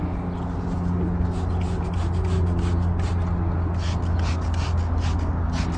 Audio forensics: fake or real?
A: real